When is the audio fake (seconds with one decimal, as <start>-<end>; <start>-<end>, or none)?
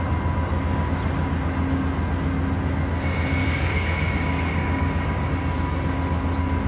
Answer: 3.4-5.3